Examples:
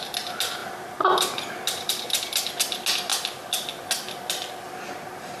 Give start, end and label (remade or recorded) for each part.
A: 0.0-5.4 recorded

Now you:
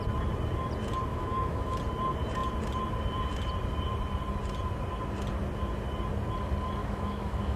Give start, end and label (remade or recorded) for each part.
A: 0.0-1.1 recorded; 1.1-1.8 remade; 1.8-6.8 recorded; 6.8-7.6 remade

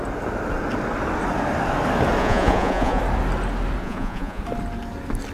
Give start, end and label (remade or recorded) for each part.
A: 0.0-2.2 recorded; 2.2-3.0 remade; 3.0-3.8 recorded; 3.8-4.4 remade; 4.4-5.3 recorded

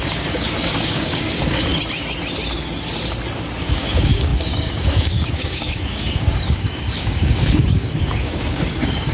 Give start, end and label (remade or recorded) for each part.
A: 0.0-1.7 remade; 1.7-3.6 recorded; 3.6-9.1 remade